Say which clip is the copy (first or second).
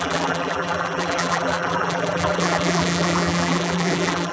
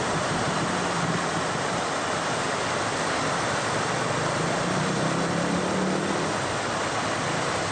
first